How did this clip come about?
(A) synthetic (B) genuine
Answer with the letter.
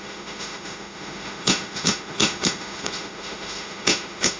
A